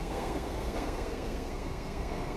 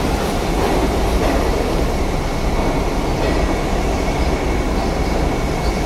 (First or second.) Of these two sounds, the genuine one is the second